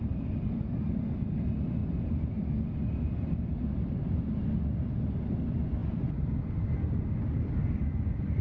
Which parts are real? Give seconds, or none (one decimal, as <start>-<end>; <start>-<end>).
0.0-8.4